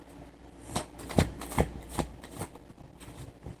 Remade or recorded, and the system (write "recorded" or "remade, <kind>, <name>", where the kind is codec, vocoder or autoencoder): recorded